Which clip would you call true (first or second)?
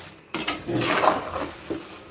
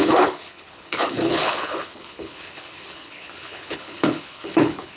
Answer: first